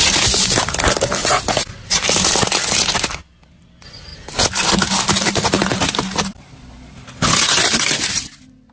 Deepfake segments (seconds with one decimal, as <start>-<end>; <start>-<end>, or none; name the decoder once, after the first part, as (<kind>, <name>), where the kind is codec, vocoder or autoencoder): 5.7-6.5 (vocoder, BigVGAN v2)